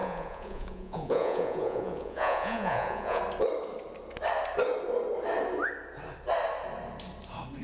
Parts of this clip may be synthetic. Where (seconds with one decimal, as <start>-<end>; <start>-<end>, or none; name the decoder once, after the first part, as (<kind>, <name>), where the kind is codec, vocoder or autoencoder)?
0.0-3.2 (vocoder, Vocos)